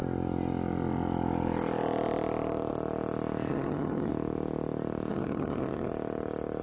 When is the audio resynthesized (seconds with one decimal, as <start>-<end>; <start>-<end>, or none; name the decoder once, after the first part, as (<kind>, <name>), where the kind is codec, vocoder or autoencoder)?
3.5-4.1 (vocoder, HiFi-GAN); 5.1-5.9